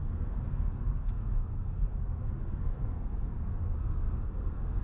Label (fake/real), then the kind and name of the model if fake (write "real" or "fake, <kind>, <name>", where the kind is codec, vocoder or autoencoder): fake, codec, SNAC